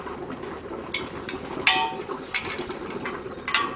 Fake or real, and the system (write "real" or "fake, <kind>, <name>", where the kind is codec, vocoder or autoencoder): real